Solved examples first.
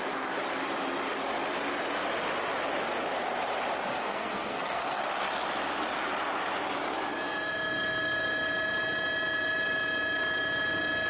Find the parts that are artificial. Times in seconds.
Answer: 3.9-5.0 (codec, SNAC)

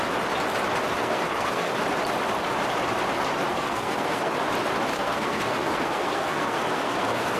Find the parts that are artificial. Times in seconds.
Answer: 1.0-1.7 (codec, SNAC); 3.5-4.3; 4.9-7.4

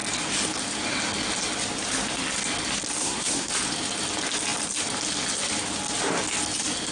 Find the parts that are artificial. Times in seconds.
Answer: 3.0-3.5 (codec, SNAC)

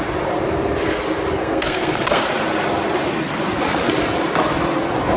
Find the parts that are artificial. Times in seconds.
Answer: 1.4-2.2 (codec, SNAC)

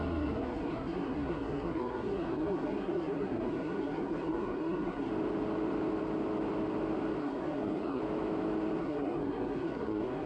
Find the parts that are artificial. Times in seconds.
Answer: 0.0-5.1 (codec, SNAC); 7.2-8.0; 8.8-10.3